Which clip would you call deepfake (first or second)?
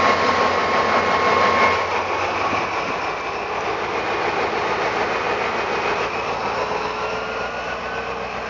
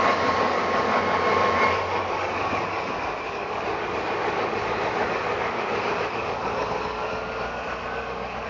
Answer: second